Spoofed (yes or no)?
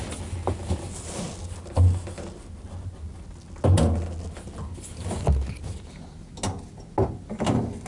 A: no